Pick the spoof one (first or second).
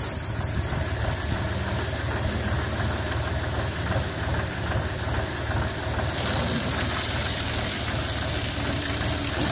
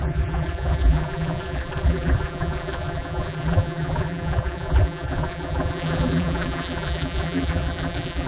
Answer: second